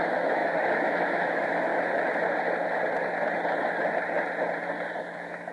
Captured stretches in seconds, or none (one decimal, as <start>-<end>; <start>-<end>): 1.7-5.0

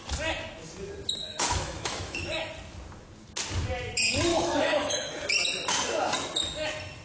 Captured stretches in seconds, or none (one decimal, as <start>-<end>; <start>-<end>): 0.0-1.3; 2.5-4.3; 4.9-7.0

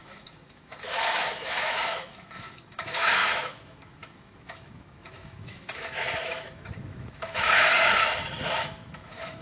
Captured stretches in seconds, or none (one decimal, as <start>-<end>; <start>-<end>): none

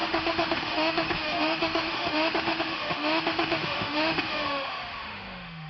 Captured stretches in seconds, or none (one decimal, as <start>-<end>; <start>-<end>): none

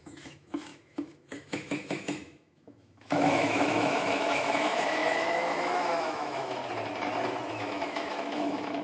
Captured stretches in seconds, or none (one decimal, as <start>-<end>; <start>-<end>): 6.6-7.5

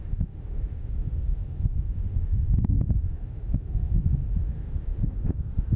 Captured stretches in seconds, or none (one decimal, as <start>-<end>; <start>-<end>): none